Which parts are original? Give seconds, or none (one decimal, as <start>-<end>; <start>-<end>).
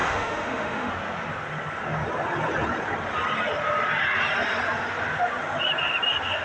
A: 0.9-6.4